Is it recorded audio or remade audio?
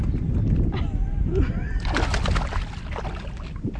recorded